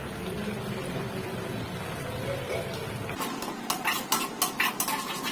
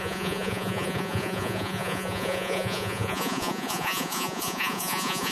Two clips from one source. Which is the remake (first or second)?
second